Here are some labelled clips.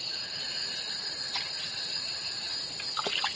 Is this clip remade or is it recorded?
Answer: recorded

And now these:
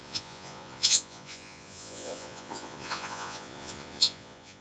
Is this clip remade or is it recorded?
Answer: remade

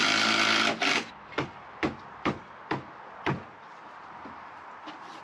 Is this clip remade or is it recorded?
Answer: recorded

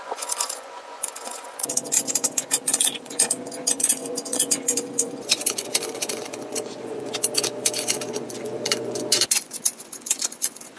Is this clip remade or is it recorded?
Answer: remade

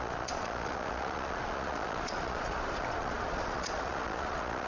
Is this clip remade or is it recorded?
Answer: remade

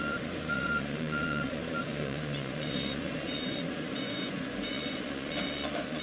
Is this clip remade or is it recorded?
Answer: remade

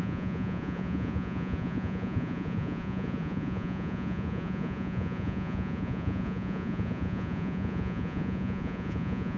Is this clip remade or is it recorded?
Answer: remade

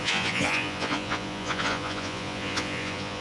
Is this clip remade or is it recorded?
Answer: remade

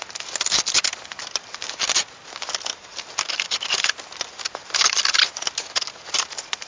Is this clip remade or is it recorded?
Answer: recorded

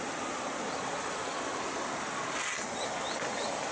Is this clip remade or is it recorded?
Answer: recorded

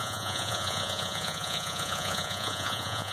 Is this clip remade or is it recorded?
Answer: remade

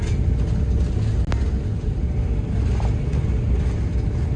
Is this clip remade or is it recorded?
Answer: recorded